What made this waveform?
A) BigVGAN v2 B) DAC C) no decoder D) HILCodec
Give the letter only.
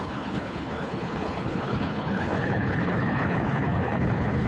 D